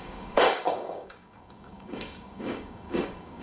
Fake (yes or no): yes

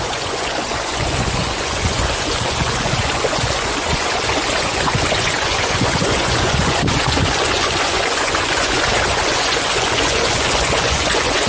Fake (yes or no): yes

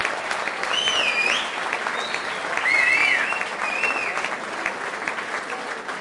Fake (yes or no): no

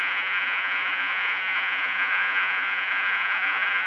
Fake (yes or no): yes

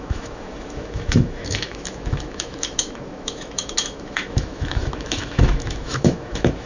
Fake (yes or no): yes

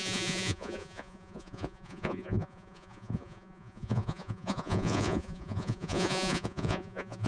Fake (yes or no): yes